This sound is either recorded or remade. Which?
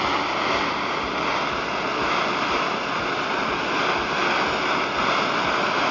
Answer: recorded